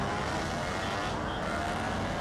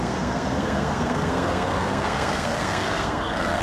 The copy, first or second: second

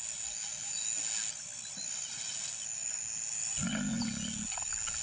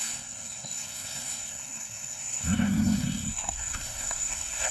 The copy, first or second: second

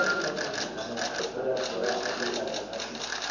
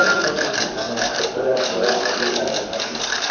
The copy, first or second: second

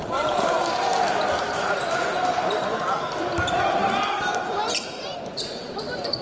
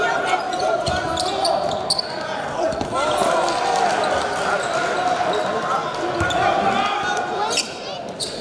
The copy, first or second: first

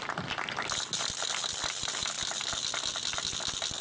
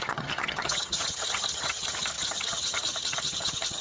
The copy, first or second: second